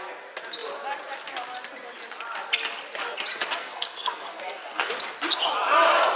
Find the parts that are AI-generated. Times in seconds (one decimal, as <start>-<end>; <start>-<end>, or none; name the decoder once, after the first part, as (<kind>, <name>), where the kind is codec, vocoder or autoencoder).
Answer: 3.6-4.9 (codec, SNAC)